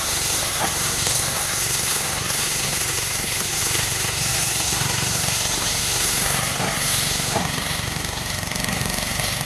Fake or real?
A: fake